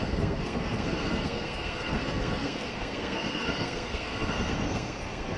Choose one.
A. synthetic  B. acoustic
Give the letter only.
A